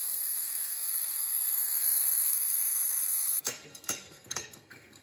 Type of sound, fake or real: fake